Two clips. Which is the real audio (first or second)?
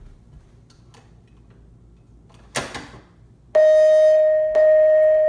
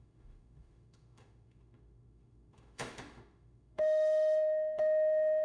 first